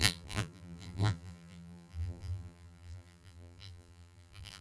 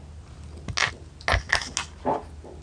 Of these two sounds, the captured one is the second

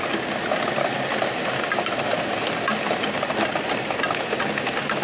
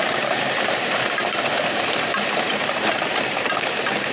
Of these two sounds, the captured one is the first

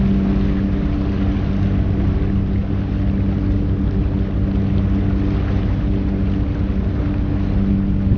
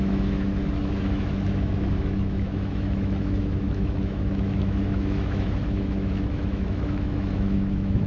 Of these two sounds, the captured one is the first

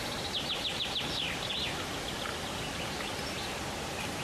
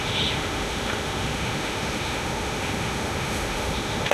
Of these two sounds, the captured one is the first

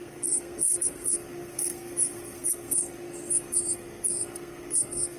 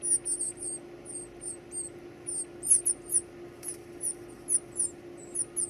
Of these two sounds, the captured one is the second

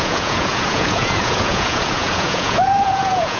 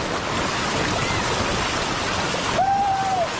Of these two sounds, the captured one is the second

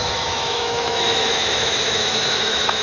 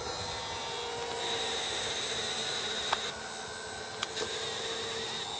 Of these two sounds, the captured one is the second